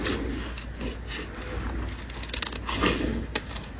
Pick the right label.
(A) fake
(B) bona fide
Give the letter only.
B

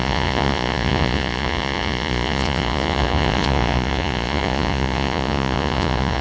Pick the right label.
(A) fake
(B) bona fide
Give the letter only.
A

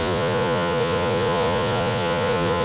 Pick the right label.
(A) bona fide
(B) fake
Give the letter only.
B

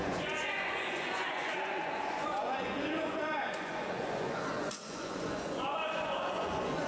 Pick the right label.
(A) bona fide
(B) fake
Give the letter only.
B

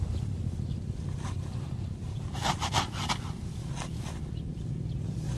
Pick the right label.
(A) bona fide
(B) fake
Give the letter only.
A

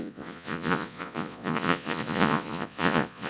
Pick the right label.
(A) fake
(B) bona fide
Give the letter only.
A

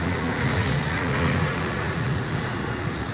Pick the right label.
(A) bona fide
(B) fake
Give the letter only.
B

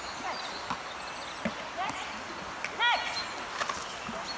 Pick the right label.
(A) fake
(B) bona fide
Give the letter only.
B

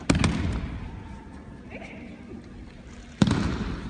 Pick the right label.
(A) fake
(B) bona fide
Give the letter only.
B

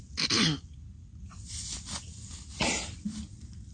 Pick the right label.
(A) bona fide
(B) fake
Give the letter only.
A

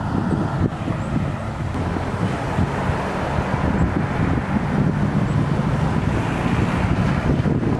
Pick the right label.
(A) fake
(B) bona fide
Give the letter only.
B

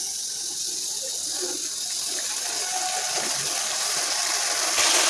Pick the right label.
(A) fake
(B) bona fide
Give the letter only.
B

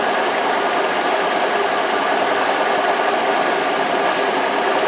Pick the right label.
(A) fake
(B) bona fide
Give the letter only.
B